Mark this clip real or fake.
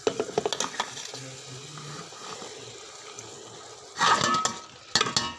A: real